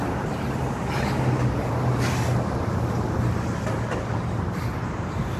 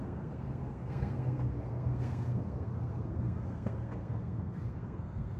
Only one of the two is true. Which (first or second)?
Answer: first